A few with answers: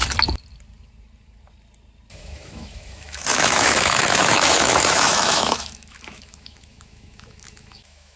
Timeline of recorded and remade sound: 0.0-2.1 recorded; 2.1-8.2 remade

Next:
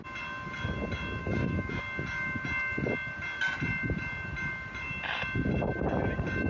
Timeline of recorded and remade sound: 0.0-1.2 recorded; 1.2-1.8 remade; 1.8-6.5 recorded

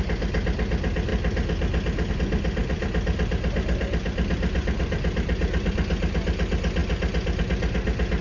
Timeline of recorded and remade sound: 0.0-2.6 recorded; 2.6-5.7 remade; 5.7-8.2 recorded

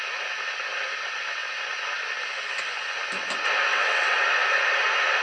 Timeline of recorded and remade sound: 0.0-3.7 recorded; 3.7-4.2 remade; 4.2-5.2 recorded

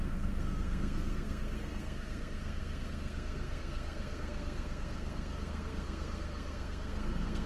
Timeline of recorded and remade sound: 0.0-7.5 remade

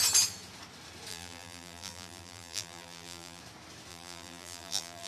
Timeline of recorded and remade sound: 0.0-1.1 recorded; 1.1-3.4 remade; 3.4-3.9 recorded; 3.9-5.1 remade